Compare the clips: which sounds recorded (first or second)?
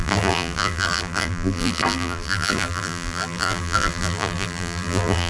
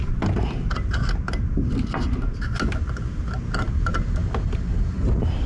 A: second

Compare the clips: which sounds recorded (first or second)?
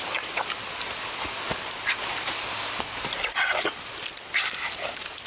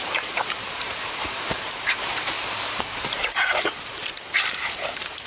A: first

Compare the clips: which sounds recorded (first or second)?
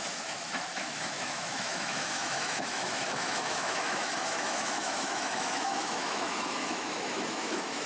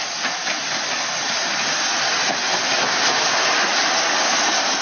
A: second